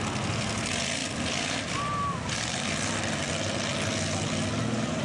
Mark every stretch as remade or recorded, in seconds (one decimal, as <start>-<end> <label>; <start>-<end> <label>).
0.0-1.0 remade; 1.0-2.9 recorded; 2.9-3.7 remade; 3.7-4.6 recorded; 4.6-5.0 remade